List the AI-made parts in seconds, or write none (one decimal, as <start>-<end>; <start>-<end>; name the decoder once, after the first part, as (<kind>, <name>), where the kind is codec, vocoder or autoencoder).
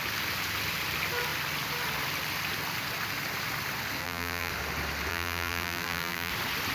4.0-4.5 (vocoder, BigVGAN v2); 5.1-6.3